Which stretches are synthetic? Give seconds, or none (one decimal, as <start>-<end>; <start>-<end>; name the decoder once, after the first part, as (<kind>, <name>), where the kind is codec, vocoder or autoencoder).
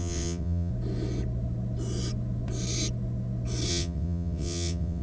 0.0-0.7 (vocoder, WaveNeXt); 3.7-5.0